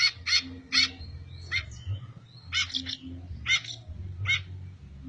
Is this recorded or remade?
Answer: recorded